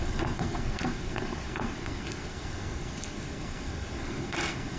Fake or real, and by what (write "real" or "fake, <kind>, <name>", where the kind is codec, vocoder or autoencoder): fake, codec, SNAC